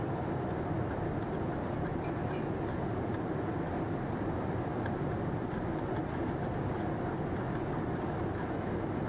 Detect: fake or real real